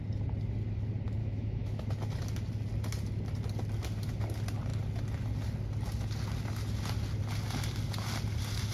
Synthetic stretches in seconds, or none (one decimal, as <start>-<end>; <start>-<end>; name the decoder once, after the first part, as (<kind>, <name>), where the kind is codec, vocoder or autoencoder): 1.2-1.9 (autoencoder, DAC-VAE)